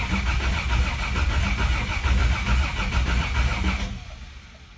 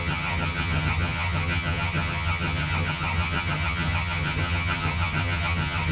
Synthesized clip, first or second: second